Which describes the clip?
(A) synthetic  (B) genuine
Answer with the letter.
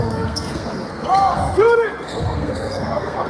A